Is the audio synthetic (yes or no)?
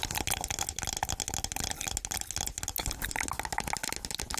no